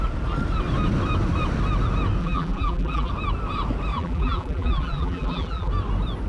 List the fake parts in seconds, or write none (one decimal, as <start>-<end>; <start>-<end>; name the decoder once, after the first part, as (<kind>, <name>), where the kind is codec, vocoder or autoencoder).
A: 2.2-3.1 (vocoder, BigVGAN v2); 3.9-5.7